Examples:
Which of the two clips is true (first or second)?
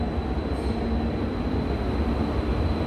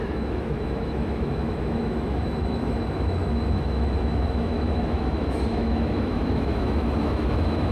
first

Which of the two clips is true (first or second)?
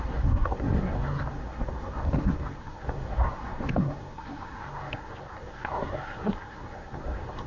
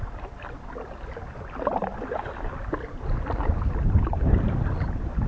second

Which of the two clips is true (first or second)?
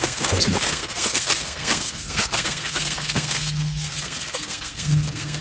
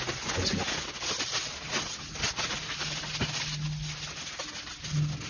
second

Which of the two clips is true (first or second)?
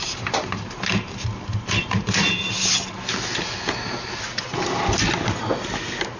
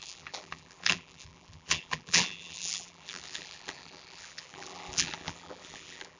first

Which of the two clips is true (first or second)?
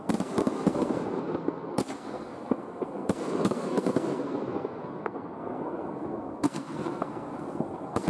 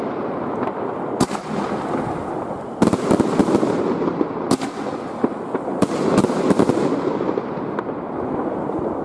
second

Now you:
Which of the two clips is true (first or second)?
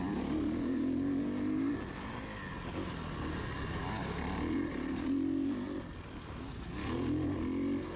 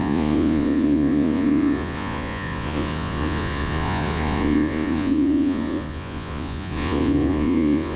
first